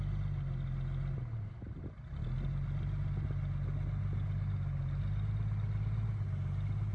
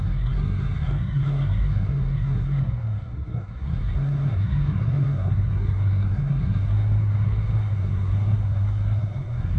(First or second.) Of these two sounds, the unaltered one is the first